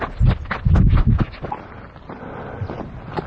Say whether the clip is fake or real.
real